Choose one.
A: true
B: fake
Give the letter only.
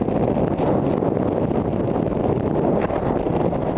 A